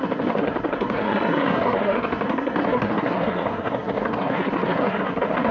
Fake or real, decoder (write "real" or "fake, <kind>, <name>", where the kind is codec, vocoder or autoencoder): fake, codec, SNAC